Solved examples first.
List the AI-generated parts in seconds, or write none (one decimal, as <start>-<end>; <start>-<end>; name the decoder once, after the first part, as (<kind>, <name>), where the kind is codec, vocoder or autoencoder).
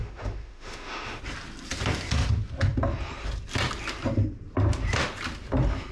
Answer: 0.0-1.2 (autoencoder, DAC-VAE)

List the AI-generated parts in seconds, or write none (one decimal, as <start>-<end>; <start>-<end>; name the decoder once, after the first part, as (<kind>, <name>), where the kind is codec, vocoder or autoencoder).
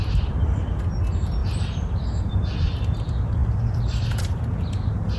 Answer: 3.4-4.2 (vocoder, BigVGAN v2)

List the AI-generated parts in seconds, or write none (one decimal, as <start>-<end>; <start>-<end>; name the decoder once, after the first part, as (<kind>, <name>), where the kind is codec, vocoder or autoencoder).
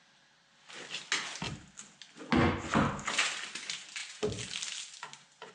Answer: none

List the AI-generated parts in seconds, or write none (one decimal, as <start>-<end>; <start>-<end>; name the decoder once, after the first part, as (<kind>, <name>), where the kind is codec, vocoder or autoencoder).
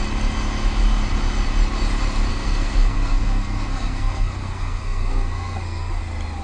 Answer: 2.3-6.0 (codec, SNAC)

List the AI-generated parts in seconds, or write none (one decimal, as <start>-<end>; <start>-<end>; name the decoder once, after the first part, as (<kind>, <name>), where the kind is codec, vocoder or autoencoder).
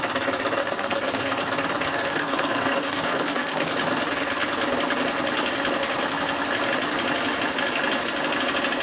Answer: 0.6-1.4 (codec, SNAC); 1.9-3.7